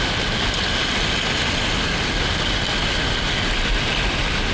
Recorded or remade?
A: recorded